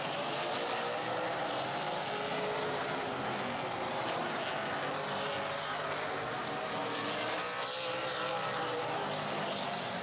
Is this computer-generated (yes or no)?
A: no